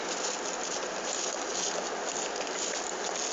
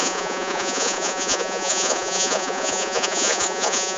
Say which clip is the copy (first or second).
second